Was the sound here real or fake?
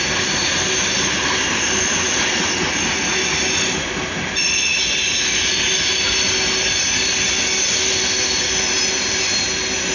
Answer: real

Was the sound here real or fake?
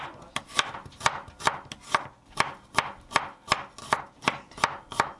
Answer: real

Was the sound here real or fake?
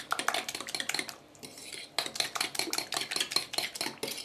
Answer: real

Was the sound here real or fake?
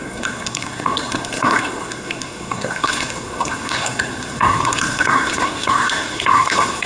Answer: fake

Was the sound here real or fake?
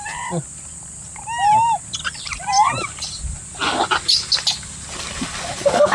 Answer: real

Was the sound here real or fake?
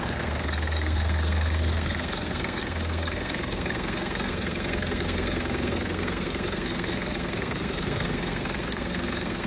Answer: fake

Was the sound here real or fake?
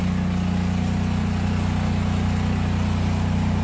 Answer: real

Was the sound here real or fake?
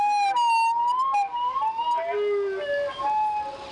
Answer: real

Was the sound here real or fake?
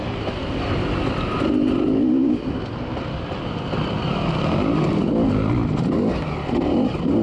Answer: real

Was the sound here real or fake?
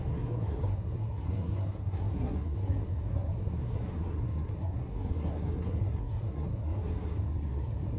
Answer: fake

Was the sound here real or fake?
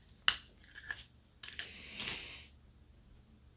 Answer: real